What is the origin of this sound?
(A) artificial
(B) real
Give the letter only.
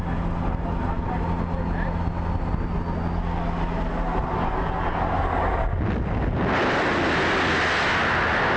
B